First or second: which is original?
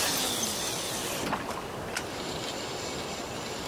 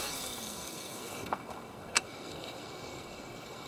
first